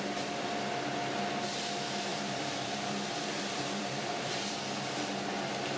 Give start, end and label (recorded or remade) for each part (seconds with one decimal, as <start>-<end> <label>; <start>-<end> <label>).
0.0-2.1 recorded; 2.1-4.6 remade; 4.6-5.8 recorded